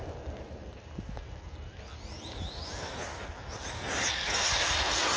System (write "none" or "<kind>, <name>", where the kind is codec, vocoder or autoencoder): none